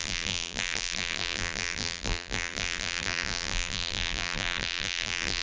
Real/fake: fake